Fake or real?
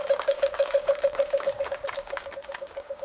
fake